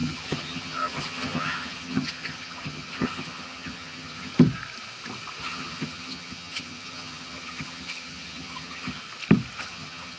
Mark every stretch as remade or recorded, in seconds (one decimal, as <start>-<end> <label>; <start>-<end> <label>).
0.0-4.3 remade; 4.3-5.4 recorded; 5.4-9.0 remade; 9.0-9.6 recorded; 9.6-10.2 remade